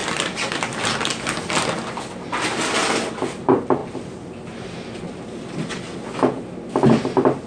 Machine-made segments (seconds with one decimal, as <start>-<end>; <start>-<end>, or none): none